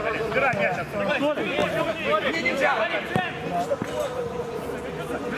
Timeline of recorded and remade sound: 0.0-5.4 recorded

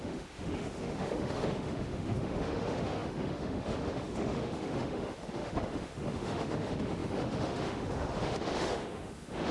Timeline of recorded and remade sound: 0.0-9.5 remade

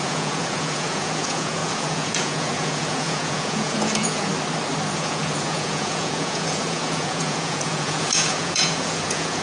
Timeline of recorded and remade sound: 0.0-4.3 remade; 4.3-4.9 recorded; 4.9-9.4 remade